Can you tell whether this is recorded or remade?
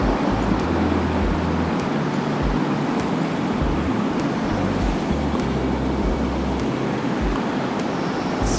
recorded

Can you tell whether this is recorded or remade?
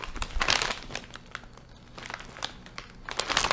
recorded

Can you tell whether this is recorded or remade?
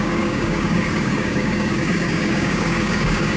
remade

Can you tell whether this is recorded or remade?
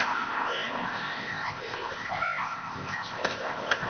remade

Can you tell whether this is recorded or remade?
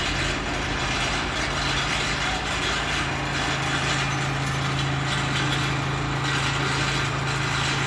recorded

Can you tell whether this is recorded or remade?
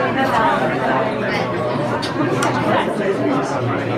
remade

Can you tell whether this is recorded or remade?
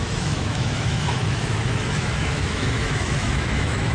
remade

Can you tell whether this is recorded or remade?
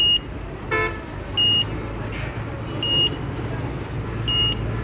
recorded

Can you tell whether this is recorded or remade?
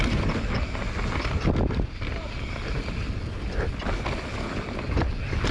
recorded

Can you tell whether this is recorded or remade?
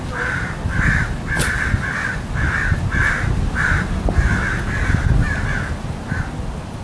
recorded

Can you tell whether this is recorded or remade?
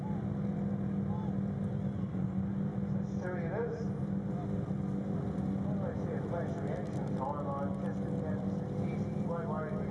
recorded